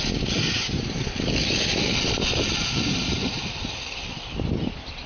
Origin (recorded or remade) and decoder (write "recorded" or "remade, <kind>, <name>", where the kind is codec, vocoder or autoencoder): remade, vocoder, BigVGAN v2